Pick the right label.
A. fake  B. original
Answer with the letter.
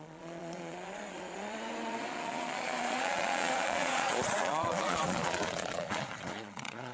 A